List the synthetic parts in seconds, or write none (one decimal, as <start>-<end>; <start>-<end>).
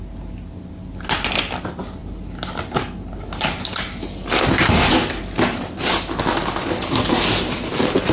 none